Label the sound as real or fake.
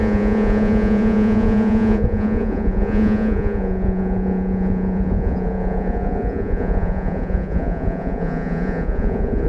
fake